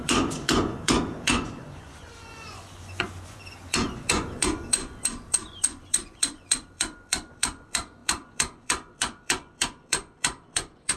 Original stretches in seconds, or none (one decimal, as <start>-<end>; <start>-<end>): none